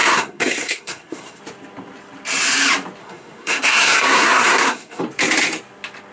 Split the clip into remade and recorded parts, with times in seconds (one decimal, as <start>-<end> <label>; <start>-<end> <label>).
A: 0.0-1.4 remade; 1.4-3.0 recorded; 3.0-5.0 remade; 5.0-6.1 recorded